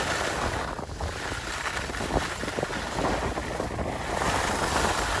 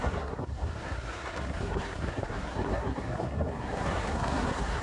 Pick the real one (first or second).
first